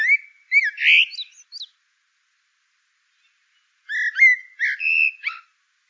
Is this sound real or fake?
real